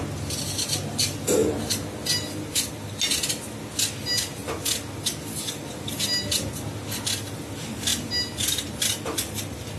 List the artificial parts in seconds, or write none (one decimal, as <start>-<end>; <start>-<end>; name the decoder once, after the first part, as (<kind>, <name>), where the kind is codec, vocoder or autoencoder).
none